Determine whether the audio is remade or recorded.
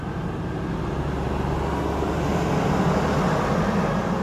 recorded